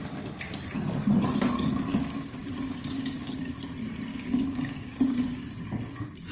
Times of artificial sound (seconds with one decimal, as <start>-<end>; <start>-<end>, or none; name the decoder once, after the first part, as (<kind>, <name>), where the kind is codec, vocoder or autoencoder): 1.9-3.6 (codec, DAC); 4.1-5.5